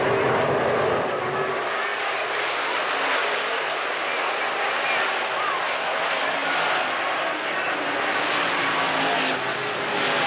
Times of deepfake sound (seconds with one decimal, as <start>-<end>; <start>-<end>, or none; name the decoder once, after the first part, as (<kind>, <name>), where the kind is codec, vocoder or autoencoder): none